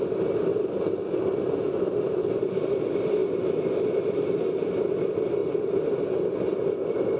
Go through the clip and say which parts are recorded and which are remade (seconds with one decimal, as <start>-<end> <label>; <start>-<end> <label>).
0.0-7.2 recorded